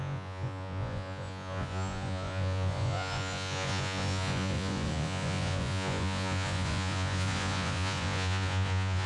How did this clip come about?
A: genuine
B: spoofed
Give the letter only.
B